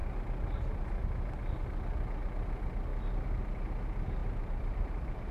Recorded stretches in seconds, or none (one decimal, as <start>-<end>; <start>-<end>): 0.0-4.2